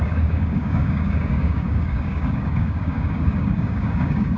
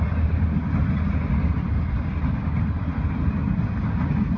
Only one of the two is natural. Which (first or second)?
second